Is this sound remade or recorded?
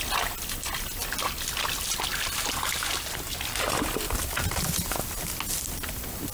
recorded